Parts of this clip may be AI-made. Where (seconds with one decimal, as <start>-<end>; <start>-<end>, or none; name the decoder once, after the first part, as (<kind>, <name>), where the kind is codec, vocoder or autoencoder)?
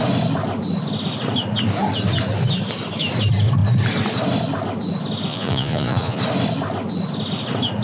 5.3-6.2 (vocoder, Vocos)